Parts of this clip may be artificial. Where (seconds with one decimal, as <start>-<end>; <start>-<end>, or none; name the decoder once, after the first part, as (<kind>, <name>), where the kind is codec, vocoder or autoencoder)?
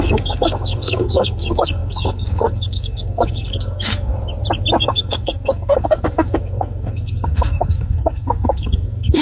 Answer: 0.0-4.1 (codec, SNAC); 4.8-9.2